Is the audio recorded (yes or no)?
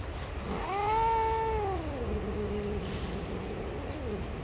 yes